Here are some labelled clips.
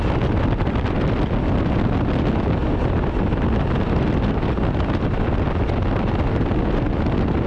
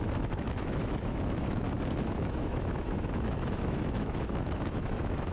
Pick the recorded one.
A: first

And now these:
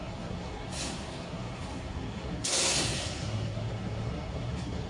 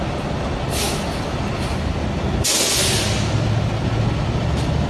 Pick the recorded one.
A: second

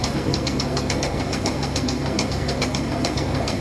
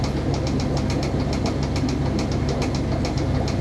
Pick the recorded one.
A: second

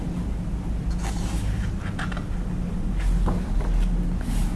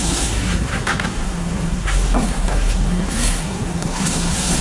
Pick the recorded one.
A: first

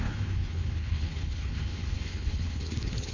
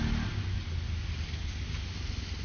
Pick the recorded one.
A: second